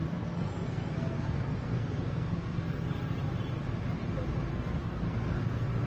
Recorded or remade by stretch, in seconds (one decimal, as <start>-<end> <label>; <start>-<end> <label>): 0.0-3.2 remade; 3.2-4.5 recorded; 4.5-5.9 remade